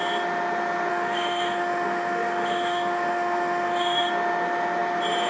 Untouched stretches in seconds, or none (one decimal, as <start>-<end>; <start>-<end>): 0.0-0.9; 4.1-5.3